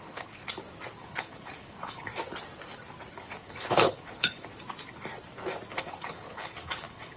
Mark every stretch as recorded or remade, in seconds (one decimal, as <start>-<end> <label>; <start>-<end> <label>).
0.0-0.4 remade; 0.4-1.0 recorded; 1.0-2.1 remade; 2.1-3.1 recorded; 3.1-4.5 remade; 4.5-5.7 recorded; 5.7-7.2 remade